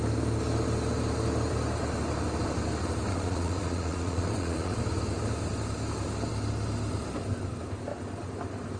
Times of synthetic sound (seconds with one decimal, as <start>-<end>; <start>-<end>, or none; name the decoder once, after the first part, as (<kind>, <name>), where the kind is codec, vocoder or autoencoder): 3.1-4.8 (vocoder, Vocos)